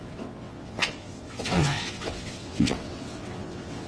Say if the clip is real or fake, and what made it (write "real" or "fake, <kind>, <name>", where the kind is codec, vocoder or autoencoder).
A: fake, vocoder, WaveNeXt